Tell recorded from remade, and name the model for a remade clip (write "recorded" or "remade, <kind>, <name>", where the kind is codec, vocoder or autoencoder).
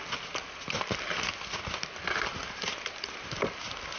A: recorded